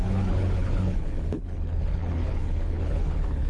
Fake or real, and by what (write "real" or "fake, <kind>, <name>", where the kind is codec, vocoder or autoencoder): fake, codec, HILCodec